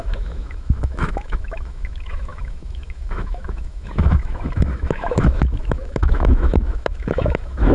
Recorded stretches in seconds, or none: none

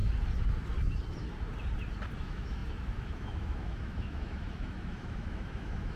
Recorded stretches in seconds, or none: 0.0-2.2

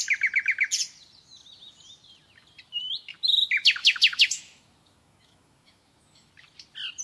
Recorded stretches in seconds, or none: 0.0-3.8; 6.3-7.0